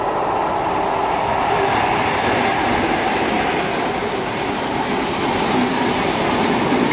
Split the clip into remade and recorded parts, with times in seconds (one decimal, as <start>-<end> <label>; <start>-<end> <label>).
0.0-1.3 remade; 1.3-3.8 recorded; 3.8-6.9 remade